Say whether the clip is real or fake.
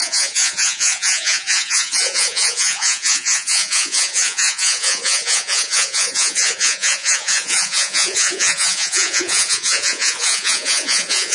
fake